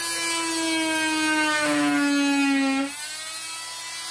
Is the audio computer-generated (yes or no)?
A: no